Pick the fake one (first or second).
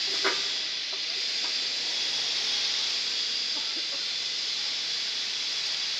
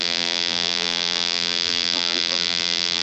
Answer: second